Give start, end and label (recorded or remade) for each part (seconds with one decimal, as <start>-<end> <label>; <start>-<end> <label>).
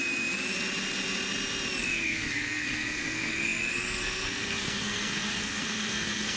0.0-1.8 recorded; 1.8-6.4 remade